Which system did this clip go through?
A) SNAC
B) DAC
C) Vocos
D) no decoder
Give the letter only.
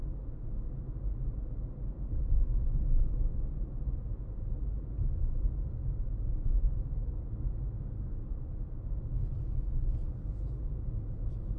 D